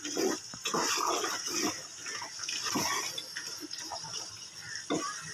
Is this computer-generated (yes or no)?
no